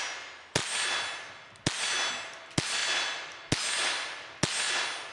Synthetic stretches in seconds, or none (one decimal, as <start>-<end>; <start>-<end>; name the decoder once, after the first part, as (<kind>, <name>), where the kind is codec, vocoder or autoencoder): none